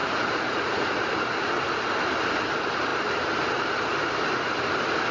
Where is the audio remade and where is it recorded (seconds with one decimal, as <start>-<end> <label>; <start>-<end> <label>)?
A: 0.0-1.1 remade; 1.1-5.1 recorded